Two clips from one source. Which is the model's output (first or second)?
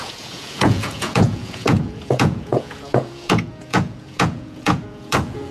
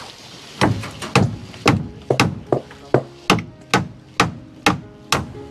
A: first